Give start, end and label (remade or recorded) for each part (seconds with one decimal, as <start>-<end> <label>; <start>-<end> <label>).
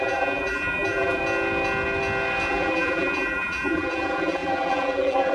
0.0-1.2 remade; 1.2-2.5 recorded; 2.5-5.3 remade